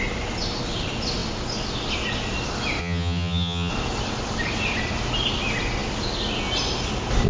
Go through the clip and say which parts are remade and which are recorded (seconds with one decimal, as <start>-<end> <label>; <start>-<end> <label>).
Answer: 0.0-2.8 recorded; 2.8-3.7 remade; 3.7-7.3 recorded